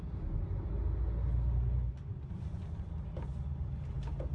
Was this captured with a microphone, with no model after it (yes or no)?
yes